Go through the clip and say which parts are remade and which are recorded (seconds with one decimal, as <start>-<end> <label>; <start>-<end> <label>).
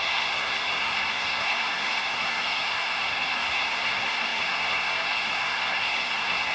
0.0-6.5 remade